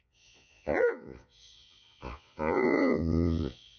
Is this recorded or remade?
remade